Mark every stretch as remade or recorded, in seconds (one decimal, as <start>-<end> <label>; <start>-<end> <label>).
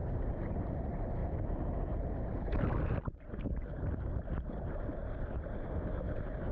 0.0-1.2 remade; 1.2-4.6 recorded; 4.6-5.0 remade; 5.0-6.5 recorded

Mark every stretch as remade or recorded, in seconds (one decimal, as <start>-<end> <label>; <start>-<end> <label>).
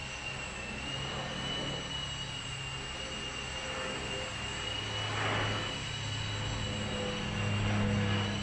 0.0-8.4 recorded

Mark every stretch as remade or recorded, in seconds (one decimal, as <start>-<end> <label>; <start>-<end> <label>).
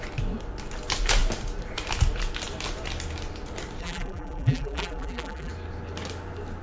0.0-3.8 recorded; 3.8-5.5 remade; 5.5-6.6 recorded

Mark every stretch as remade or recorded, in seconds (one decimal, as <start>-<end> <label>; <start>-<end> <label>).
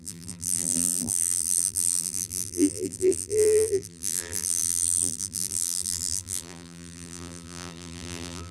0.0-8.5 remade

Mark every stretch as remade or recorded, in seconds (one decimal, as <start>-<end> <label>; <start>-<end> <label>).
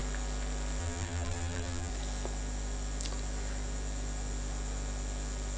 0.0-0.8 recorded; 0.8-1.9 remade; 1.9-5.6 recorded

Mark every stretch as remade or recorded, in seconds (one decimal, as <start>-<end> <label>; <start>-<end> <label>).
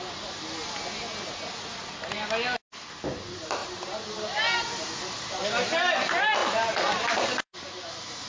0.0-6.4 recorded; 6.4-7.9 remade; 7.9-8.3 recorded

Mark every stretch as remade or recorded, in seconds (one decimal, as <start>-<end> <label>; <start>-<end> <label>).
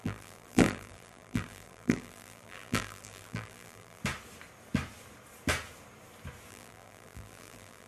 0.0-4.0 remade; 4.0-6.5 recorded; 6.5-7.9 remade